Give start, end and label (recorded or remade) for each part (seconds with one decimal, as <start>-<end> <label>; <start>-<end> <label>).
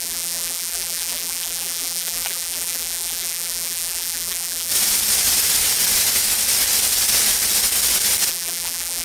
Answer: 0.0-4.7 remade; 4.7-8.3 recorded; 8.3-9.0 remade